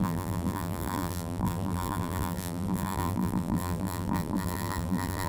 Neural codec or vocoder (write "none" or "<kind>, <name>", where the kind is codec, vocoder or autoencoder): vocoder, BigVGAN v2